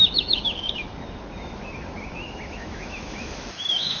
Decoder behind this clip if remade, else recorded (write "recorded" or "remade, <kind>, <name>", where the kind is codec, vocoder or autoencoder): remade, autoencoder, DAC-VAE